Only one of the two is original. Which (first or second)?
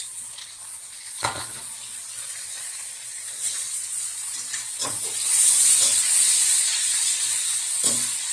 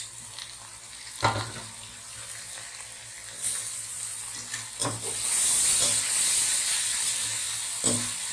second